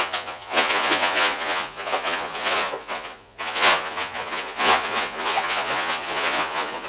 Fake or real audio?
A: fake